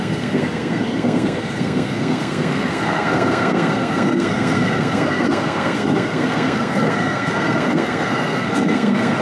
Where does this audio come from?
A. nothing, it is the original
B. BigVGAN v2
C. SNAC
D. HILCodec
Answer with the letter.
C